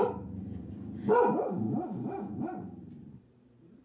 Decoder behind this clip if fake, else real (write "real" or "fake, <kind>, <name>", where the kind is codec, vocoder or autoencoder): fake, vocoder, BigVGAN v2